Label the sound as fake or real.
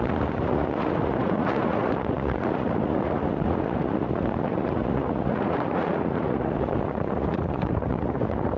fake